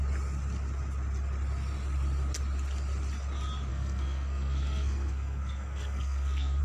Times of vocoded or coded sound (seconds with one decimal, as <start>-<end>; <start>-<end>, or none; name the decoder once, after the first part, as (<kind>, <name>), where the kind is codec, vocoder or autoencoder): 3.7-6.6 (codec, SNAC)